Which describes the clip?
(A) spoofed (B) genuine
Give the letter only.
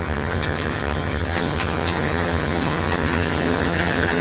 A